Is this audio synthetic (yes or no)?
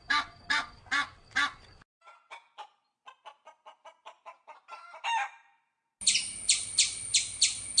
no